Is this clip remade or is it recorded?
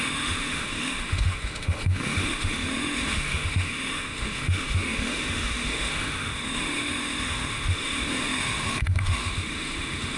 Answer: remade